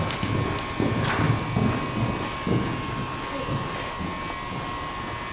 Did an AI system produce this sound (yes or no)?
no